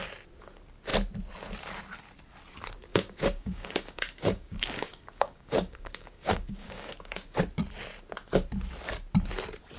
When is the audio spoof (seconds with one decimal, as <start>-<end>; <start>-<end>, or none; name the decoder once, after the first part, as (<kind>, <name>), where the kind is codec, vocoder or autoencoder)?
2.9-7.4 (codec, DAC)